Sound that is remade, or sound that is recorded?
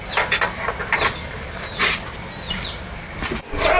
recorded